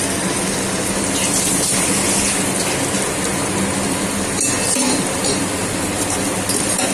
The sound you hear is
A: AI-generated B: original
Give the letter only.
B